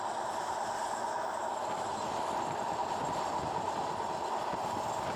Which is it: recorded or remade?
recorded